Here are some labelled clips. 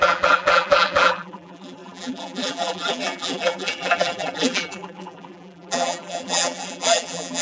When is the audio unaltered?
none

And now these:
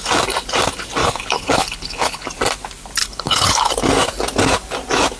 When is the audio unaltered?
0.0-1.0; 2.3-3.0; 3.7-5.2

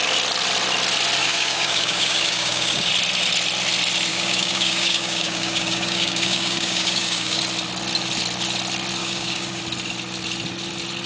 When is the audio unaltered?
0.0-1.2; 2.9-4.1; 7.4-9.0; 9.6-11.1

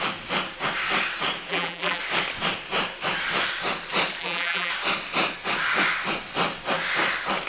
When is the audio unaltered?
0.0-1.5; 2.0-4.2; 4.7-7.5